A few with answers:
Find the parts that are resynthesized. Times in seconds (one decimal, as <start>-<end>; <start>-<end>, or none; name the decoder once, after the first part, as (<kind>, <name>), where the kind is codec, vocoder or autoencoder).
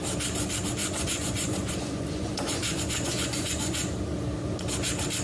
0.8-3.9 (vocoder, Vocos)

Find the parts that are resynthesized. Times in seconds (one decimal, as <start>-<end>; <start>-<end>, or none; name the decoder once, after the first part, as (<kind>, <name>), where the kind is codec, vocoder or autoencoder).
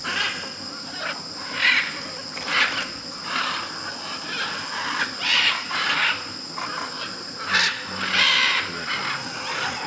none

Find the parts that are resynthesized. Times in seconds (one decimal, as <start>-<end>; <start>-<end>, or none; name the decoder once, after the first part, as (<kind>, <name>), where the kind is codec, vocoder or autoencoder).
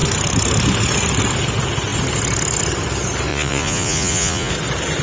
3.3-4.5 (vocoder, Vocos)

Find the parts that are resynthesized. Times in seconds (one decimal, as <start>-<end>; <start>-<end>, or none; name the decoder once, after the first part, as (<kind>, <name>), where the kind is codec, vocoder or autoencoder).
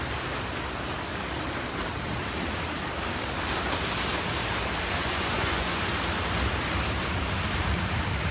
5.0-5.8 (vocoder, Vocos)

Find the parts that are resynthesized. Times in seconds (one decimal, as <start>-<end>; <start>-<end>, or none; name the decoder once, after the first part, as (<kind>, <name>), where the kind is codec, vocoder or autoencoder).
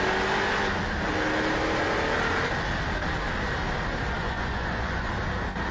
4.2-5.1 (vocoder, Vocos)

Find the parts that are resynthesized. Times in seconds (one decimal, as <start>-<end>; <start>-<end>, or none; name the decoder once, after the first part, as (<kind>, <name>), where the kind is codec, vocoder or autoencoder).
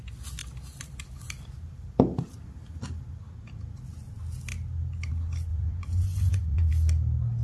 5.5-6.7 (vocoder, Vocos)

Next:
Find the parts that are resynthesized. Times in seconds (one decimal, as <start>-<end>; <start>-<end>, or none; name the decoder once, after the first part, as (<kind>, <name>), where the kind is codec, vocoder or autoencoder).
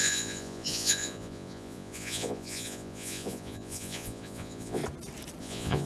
0.0-4.8 (vocoder, Vocos); 5.4-5.9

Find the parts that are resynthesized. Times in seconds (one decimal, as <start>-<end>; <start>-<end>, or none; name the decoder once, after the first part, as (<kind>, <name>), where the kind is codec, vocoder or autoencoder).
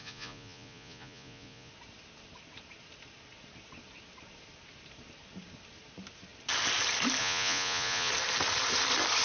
0.0-1.7 (vocoder, Vocos); 7.2-8.1